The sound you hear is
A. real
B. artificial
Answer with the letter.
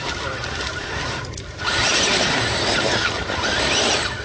B